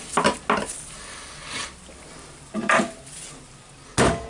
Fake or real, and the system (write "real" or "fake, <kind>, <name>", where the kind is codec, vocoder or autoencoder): real